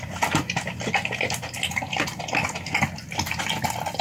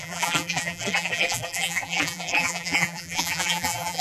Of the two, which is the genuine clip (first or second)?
first